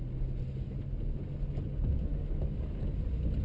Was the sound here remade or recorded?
recorded